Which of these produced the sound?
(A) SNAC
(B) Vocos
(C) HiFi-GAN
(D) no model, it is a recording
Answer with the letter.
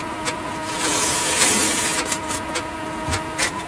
D